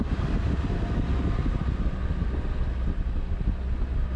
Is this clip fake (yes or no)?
no